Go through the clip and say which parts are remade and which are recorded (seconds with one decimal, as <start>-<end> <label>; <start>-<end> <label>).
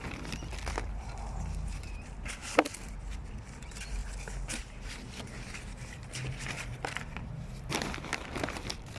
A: 0.0-4.0 remade; 4.0-4.6 recorded; 4.6-9.0 remade